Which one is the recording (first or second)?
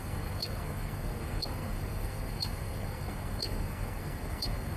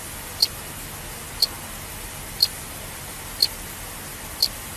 second